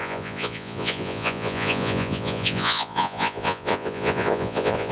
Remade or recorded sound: remade